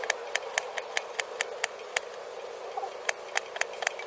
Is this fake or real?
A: real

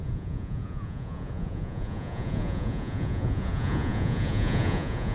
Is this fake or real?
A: fake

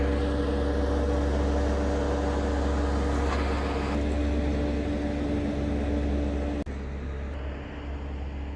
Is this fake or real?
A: real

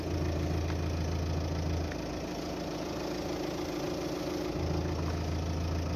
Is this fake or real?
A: real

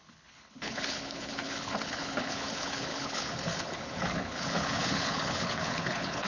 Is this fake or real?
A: fake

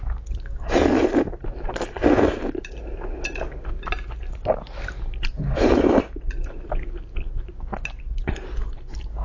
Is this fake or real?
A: real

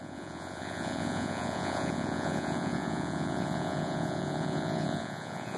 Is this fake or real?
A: fake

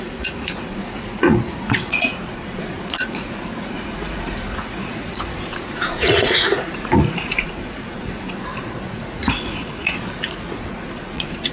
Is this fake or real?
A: fake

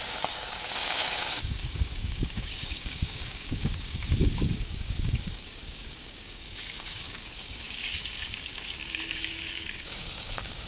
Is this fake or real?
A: fake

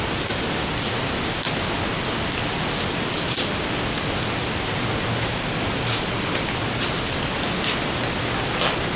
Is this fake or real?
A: real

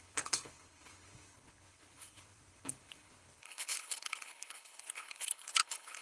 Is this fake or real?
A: fake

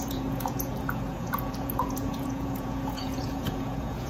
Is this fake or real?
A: fake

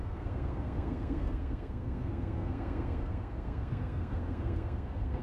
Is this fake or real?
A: fake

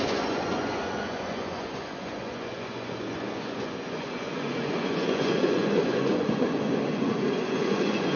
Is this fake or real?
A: fake